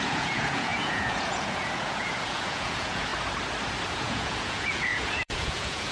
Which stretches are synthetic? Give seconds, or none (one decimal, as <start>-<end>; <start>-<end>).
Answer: 0.0-3.1; 3.9-5.9